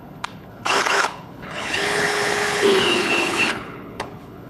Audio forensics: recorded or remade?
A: remade